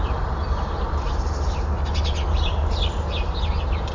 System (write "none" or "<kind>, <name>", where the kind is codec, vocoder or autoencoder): none